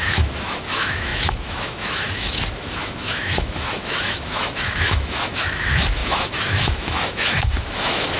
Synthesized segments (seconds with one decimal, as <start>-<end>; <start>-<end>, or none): 0.0-8.2